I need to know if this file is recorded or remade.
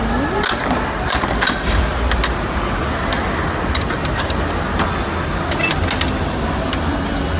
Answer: recorded